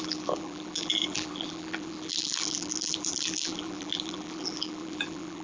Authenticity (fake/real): fake